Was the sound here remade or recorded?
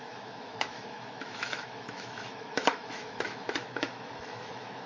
remade